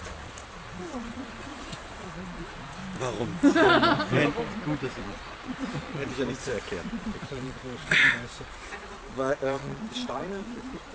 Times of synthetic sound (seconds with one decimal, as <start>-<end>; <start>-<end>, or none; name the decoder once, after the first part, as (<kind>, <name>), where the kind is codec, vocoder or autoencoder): 0.0-2.8 (vocoder, Vocos); 5.0-6.0; 6.9-7.6; 8.6-10.9